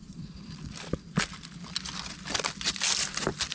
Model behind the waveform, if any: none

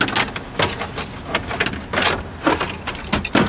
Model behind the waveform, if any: none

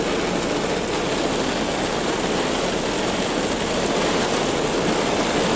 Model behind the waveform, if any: none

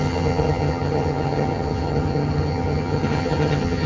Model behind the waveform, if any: vocoder, HiFi-GAN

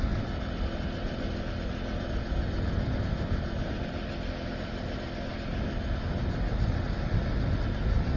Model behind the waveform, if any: none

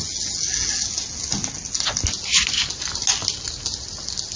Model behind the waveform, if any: none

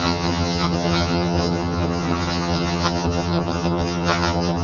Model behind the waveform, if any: vocoder, HiFi-GAN